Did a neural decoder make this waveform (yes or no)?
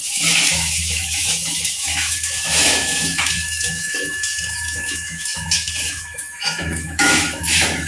yes